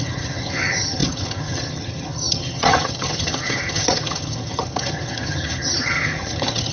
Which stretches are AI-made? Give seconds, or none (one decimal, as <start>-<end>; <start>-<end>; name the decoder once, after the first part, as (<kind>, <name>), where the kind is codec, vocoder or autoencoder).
0.0-6.7 (vocoder, HiFi-GAN)